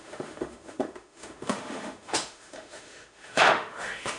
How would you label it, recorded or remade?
remade